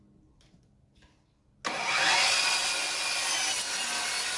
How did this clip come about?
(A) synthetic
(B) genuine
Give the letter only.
B